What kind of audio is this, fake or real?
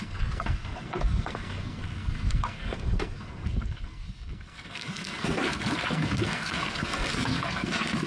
fake